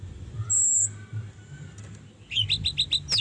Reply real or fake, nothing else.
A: real